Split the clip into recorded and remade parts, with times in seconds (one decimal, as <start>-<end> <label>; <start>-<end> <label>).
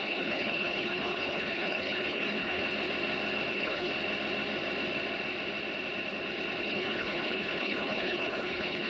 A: 0.0-2.6 remade; 2.6-3.5 recorded; 3.5-3.9 remade; 3.9-6.6 recorded; 6.6-8.9 remade